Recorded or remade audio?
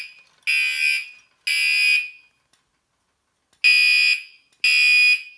recorded